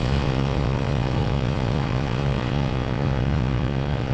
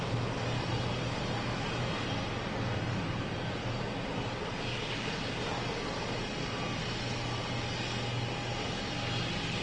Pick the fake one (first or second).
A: first